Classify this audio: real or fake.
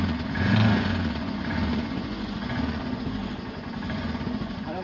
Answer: fake